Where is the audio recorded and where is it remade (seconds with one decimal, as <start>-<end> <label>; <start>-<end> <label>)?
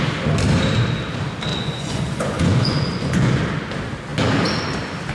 0.0-1.5 recorded; 1.5-3.4 remade; 3.4-5.1 recorded